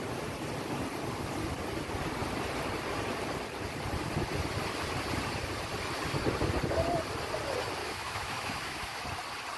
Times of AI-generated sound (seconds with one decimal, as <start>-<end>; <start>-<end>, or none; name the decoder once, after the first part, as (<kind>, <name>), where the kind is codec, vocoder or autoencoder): 7.8-9.0 (autoencoder, DAC-VAE)